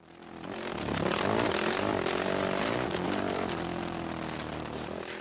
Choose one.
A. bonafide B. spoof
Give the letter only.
A